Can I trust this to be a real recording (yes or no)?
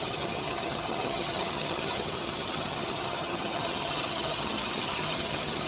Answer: no